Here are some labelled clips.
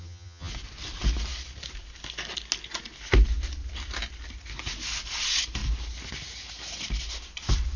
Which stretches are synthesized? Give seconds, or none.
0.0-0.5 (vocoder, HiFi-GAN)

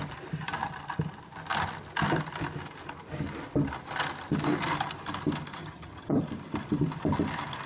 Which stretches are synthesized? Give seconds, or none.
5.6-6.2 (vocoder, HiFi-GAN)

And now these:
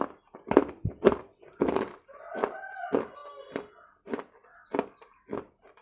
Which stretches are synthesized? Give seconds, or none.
none